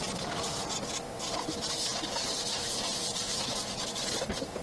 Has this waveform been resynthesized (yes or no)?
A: no